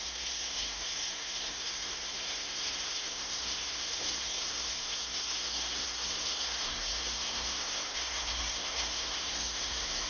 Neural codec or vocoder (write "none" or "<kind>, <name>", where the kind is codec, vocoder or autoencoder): codec, SNAC